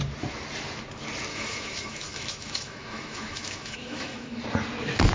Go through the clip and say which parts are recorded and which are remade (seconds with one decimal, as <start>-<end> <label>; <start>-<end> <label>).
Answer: 0.0-1.3 recorded; 1.3-4.4 remade; 4.4-5.1 recorded